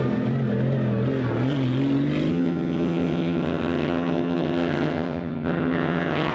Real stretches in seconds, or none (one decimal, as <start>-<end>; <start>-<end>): 0.0-2.3